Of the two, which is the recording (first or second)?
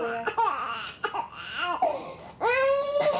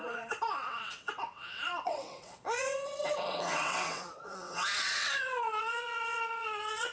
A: first